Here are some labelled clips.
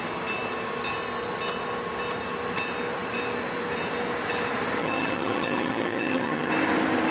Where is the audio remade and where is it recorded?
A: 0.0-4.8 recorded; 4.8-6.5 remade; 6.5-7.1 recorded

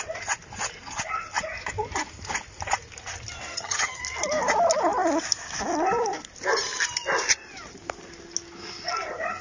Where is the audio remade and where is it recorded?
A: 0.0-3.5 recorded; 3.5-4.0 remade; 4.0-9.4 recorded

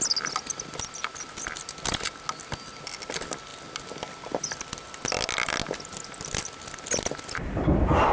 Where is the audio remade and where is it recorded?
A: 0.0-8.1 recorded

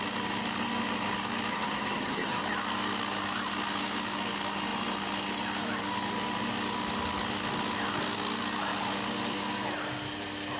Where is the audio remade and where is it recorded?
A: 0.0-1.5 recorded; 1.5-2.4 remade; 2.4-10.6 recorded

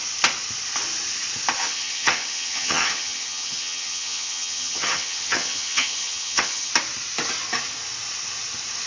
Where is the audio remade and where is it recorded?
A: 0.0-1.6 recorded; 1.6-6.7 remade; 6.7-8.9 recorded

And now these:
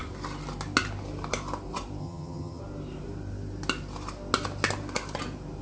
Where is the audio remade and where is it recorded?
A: 0.0-2.0 recorded; 2.0-2.6 remade; 2.6-5.6 recorded